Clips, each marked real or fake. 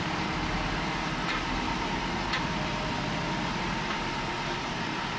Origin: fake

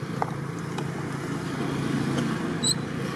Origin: real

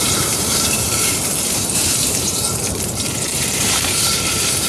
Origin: fake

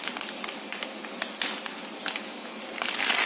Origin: real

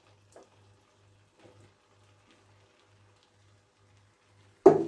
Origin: real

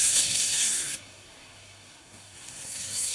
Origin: fake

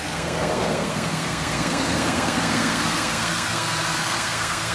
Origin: fake